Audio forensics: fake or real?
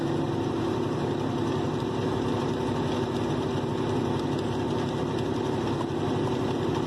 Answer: real